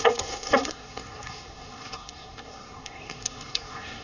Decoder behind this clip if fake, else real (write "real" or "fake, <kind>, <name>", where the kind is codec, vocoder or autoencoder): fake, codec, SNAC